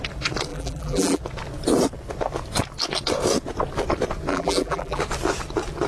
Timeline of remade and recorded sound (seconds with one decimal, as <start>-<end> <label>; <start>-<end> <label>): 0.0-0.5 recorded; 0.5-1.2 remade; 1.2-4.3 recorded; 4.3-5.0 remade; 5.0-5.9 recorded